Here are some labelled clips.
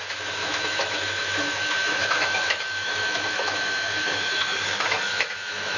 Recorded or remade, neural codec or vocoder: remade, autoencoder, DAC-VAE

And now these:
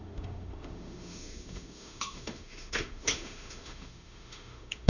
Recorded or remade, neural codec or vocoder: remade, autoencoder, DAC-VAE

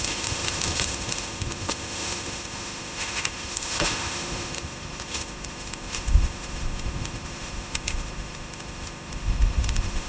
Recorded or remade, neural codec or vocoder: remade, autoencoder, DAC-VAE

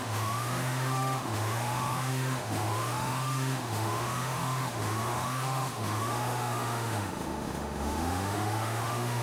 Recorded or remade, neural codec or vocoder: remade, autoencoder, DAC-VAE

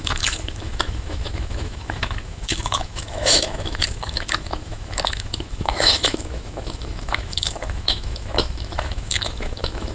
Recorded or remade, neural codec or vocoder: remade, autoencoder, DAC-VAE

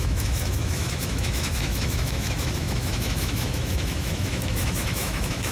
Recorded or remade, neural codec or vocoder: remade, autoencoder, DAC-VAE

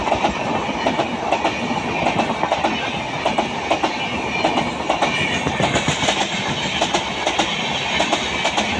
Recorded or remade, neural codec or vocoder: recorded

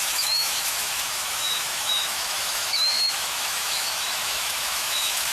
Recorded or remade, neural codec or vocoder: remade, autoencoder, DAC-VAE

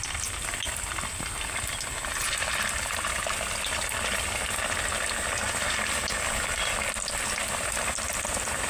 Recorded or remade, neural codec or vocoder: recorded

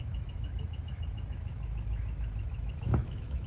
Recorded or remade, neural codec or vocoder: remade, autoencoder, DAC-VAE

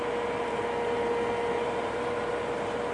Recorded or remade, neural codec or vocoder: recorded